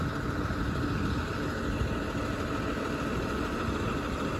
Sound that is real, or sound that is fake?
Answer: real